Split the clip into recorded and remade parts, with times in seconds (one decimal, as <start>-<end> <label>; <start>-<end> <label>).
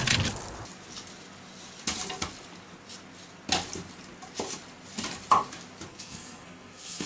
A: 0.0-5.9 recorded; 5.9-7.1 remade